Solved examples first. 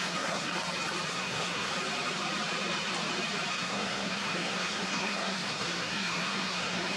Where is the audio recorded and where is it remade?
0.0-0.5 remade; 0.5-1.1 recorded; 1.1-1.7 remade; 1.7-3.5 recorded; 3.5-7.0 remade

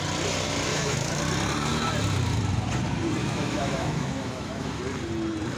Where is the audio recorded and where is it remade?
0.0-0.7 recorded; 0.7-1.2 remade; 1.2-3.2 recorded; 3.2-4.8 remade; 4.8-5.6 recorded

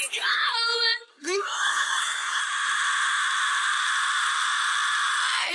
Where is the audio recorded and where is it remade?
0.0-1.1 recorded; 1.1-2.4 remade; 2.4-5.5 recorded

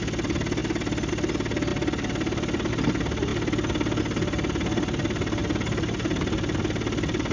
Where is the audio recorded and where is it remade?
0.0-1.7 recorded; 1.7-2.7 remade; 2.7-5.4 recorded; 5.4-6.6 remade; 6.6-7.3 recorded

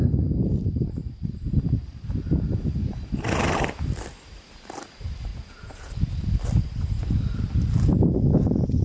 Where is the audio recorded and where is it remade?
0.0-5.3 recorded; 5.3-5.9 remade; 5.9-8.8 recorded